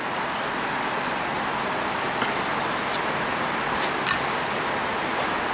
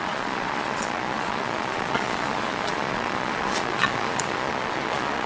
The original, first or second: first